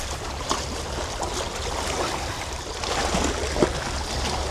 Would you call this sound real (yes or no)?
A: yes